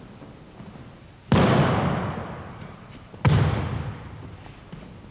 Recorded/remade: recorded